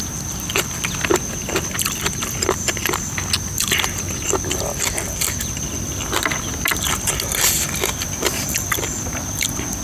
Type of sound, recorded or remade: recorded